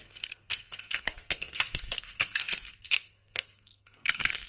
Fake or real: fake